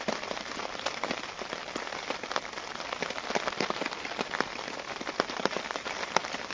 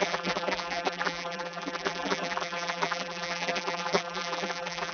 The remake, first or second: second